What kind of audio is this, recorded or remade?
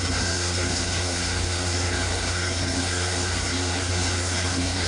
remade